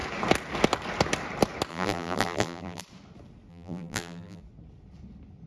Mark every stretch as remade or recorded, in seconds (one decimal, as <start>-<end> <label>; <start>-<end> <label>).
0.0-1.7 recorded; 1.7-2.8 remade; 2.8-3.5 recorded; 3.5-4.4 remade; 4.4-5.5 recorded